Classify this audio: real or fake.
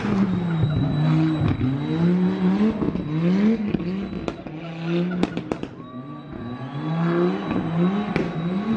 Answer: real